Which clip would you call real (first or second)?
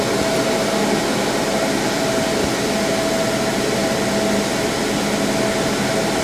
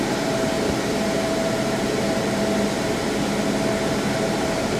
first